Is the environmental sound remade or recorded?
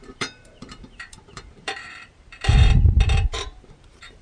remade